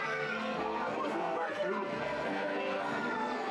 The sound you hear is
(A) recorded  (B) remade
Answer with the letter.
B